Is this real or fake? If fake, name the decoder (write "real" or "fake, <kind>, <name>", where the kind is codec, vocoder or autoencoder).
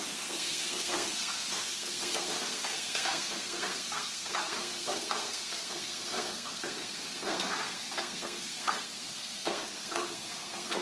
fake, codec, SNAC